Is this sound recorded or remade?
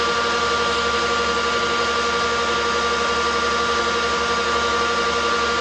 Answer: recorded